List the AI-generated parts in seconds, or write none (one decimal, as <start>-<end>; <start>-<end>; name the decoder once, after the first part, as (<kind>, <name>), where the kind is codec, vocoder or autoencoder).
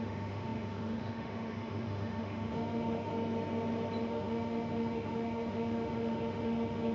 0.0-3.1 (autoencoder, DAC-VAE); 4.0-6.9